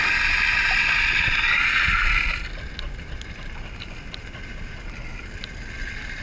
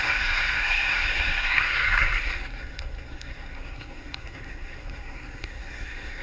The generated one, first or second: second